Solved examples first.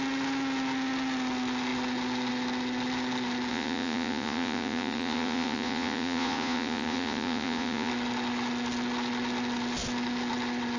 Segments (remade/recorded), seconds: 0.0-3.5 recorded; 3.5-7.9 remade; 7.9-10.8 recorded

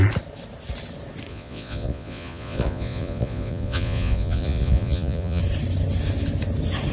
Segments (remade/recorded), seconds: 0.0-1.3 recorded; 1.3-5.4 remade; 5.4-6.9 recorded